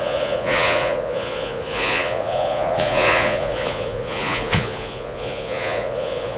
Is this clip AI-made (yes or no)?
yes